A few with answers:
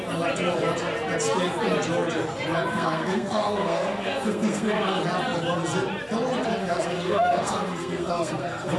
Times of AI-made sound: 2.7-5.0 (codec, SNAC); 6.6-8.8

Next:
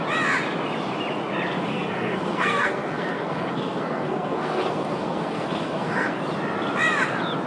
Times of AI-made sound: 1.7-6.2 (codec, SNAC)

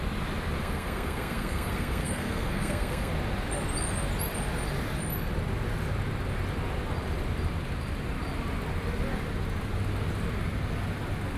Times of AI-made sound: 0.6-3.1 (codec, SNAC)